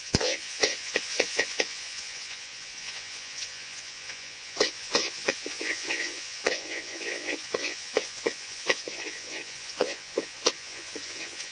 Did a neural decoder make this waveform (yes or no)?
yes